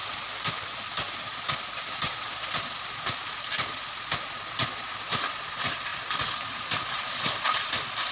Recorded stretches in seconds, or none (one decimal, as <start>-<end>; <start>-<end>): 0.0-8.1